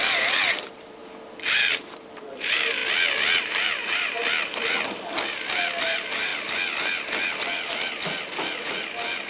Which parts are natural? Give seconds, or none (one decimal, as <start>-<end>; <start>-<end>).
1.0-1.5; 2.8-3.4; 4.2-5.8; 6.3-9.3